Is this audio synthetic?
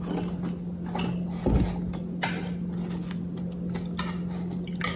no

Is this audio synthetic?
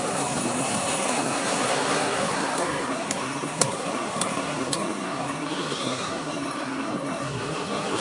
yes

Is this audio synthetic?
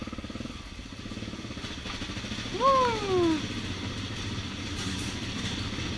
no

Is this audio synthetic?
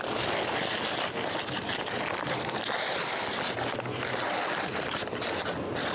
no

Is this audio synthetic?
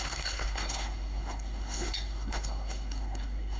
yes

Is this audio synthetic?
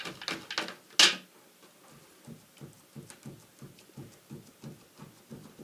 no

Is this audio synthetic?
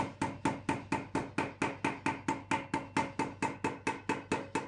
no